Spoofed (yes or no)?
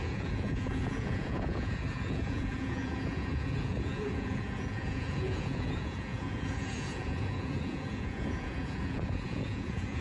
yes